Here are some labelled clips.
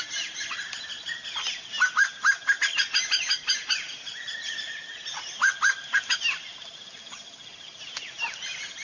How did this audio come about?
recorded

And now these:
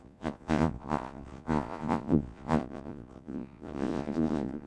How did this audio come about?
remade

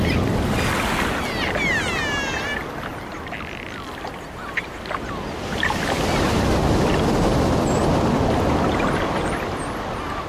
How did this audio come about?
recorded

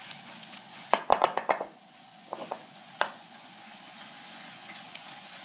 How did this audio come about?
remade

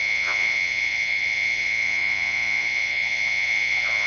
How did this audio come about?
remade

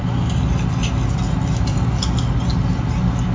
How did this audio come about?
recorded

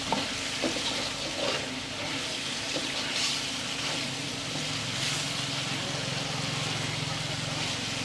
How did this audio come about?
recorded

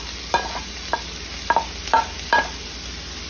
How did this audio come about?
recorded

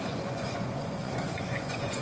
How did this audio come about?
remade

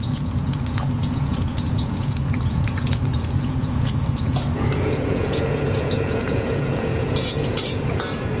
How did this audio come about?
remade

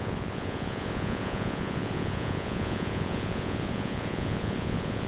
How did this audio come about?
remade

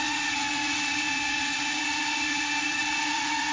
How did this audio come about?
remade